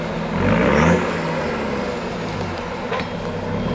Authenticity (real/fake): real